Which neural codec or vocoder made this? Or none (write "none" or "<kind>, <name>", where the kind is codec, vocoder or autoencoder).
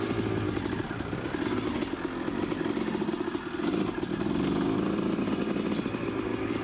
none